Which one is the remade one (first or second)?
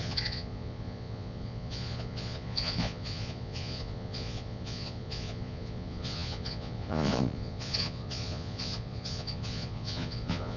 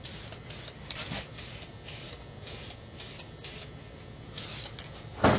first